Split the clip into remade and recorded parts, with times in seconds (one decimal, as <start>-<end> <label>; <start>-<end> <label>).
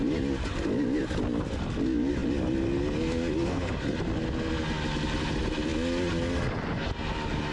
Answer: 0.0-7.5 recorded